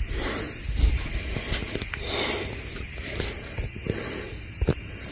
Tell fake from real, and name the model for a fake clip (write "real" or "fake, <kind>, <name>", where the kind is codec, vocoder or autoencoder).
real